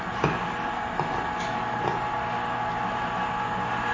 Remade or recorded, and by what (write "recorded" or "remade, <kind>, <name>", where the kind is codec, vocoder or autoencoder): recorded